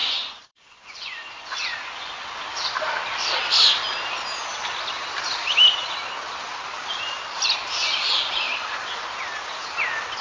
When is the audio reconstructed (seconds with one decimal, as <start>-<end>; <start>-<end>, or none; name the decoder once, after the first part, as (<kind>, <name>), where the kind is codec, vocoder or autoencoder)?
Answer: 0.0-2.2 (vocoder, Vocos)